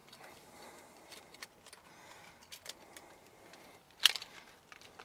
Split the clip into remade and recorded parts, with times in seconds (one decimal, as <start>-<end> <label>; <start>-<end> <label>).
0.0-1.4 remade; 1.4-5.0 recorded